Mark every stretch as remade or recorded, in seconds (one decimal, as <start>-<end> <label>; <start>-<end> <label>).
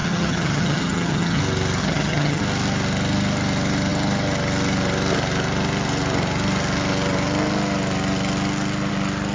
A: 0.0-1.4 remade; 1.4-1.8 recorded; 1.8-2.4 remade; 2.4-9.3 recorded